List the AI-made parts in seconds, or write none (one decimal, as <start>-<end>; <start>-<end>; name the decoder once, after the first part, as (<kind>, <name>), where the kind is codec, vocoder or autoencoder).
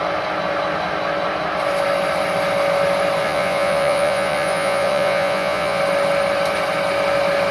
3.2-5.8 (vocoder, Vocos)